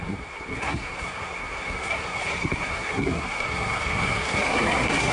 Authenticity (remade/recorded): remade